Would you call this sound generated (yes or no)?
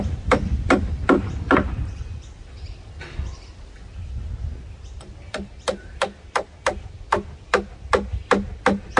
no